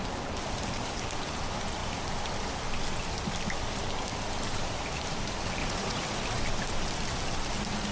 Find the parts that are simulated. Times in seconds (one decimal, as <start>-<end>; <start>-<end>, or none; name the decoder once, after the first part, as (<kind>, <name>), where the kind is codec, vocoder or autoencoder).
5.6-6.2 (vocoder, Vocos)